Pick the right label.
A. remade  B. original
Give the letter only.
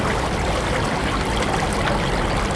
B